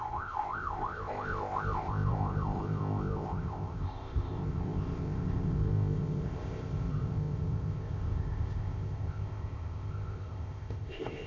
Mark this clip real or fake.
fake